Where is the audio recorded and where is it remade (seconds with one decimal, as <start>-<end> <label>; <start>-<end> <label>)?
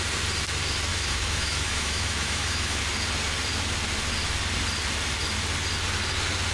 0.0-0.9 recorded; 0.9-2.8 remade; 2.8-6.5 recorded